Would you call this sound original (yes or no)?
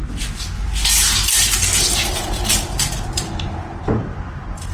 yes